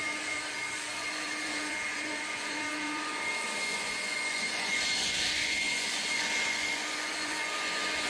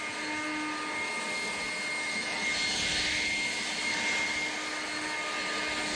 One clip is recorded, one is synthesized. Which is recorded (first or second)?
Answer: second